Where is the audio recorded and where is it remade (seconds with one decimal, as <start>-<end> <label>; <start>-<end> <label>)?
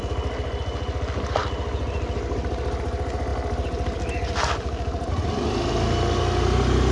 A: 0.0-6.9 recorded